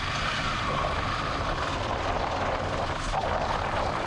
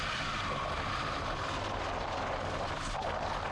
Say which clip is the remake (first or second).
first